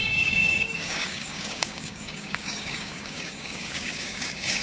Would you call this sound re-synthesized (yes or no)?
yes